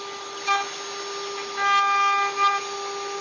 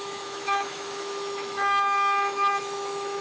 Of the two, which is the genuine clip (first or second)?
first